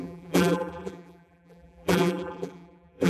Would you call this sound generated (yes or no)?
yes